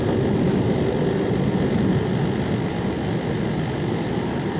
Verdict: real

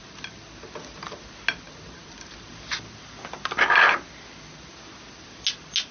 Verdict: real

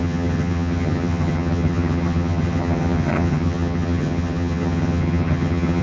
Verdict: fake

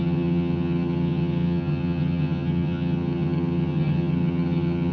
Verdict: fake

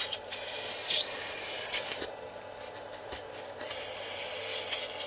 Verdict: real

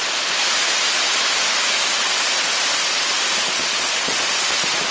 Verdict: real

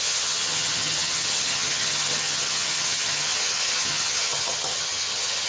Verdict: fake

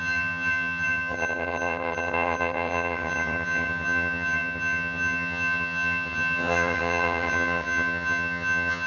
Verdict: fake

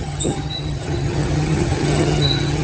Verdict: fake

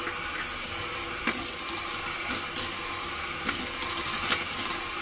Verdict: real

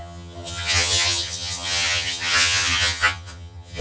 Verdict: fake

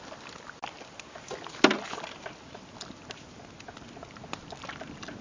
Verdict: real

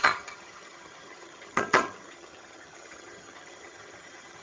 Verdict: fake